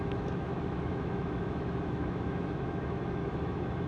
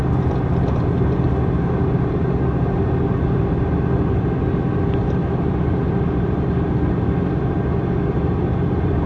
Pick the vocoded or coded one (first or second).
first